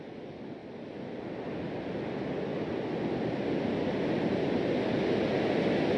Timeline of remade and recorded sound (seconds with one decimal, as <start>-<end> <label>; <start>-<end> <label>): 0.0-6.0 recorded